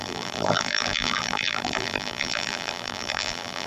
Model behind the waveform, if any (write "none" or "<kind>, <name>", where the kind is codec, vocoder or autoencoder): vocoder, BigVGAN v2